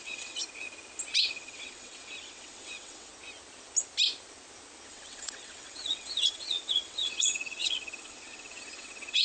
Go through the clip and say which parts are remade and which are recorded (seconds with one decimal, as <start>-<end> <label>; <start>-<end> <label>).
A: 0.0-0.4 remade; 0.4-1.2 recorded; 1.2-3.1 remade; 3.1-4.9 recorded; 4.9-9.2 remade

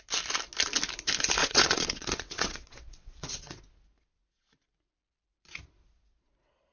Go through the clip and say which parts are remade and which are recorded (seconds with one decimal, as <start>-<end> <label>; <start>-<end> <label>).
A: 0.0-1.4 recorded; 1.4-3.6 remade; 3.6-6.7 recorded

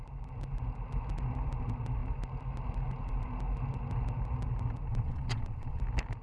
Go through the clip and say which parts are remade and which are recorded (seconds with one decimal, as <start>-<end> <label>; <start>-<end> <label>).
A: 0.0-4.9 recorded; 4.9-5.8 remade; 5.8-6.2 recorded

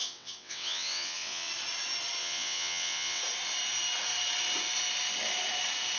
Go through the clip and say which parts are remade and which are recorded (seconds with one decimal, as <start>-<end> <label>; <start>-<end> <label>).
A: 0.0-1.5 remade; 1.5-2.2 recorded; 2.2-3.2 remade; 3.2-6.0 recorded